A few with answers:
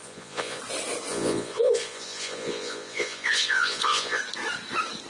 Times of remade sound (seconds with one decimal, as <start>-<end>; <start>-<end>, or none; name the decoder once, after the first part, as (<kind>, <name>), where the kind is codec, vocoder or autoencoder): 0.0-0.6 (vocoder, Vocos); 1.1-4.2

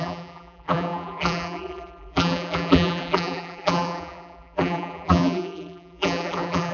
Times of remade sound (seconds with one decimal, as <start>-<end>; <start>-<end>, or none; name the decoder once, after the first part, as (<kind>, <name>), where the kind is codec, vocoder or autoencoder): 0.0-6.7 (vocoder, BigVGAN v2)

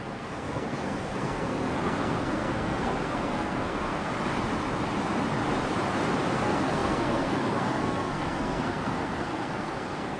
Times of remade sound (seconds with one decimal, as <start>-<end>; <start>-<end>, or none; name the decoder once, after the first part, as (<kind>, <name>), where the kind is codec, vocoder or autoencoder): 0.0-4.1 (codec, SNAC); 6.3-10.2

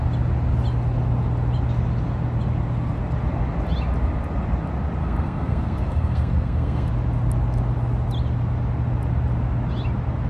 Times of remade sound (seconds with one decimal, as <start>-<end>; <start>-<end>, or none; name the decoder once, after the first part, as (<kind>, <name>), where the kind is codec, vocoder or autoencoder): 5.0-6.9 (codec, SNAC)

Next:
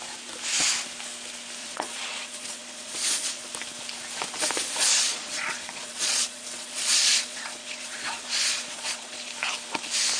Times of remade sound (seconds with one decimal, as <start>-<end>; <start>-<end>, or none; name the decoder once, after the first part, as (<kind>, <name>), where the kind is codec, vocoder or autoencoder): 1.6-3.5 (vocoder, Vocos); 4.9-9.3